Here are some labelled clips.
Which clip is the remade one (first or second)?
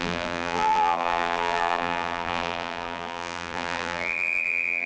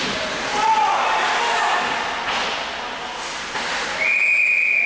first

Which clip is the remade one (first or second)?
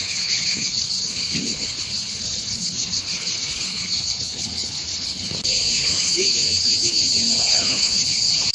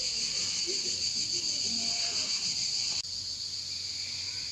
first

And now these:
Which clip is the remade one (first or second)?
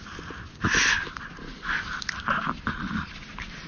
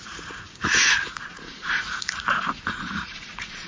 second